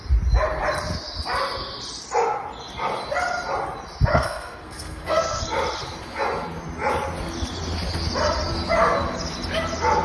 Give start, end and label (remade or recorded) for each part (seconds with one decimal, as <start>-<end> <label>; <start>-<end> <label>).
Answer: 0.0-4.1 recorded; 4.1-5.4 remade; 5.4-10.0 recorded